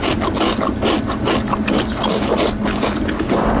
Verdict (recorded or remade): recorded